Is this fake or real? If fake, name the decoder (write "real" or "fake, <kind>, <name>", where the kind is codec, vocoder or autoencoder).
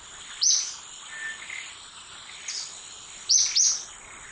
real